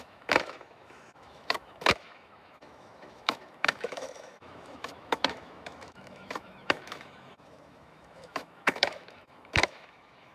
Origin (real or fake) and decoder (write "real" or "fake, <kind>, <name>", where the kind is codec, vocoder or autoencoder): fake, autoencoder, DAC-VAE